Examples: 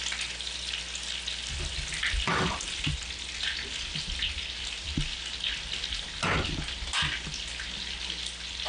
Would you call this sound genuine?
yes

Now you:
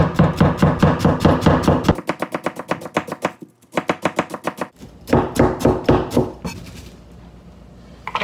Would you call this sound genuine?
yes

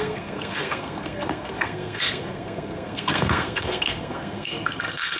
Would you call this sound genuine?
no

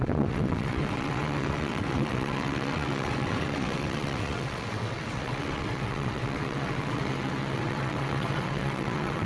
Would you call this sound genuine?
no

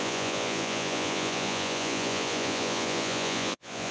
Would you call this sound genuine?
no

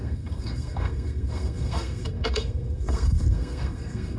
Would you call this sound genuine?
no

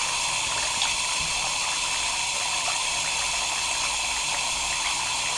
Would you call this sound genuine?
yes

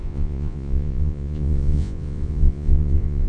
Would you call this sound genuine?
no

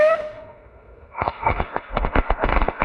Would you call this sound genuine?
no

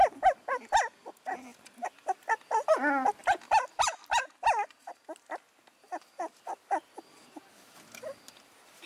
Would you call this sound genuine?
yes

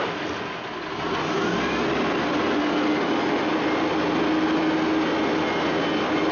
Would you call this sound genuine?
yes